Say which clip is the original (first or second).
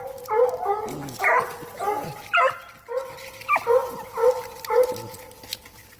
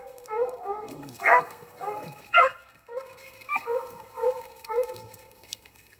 first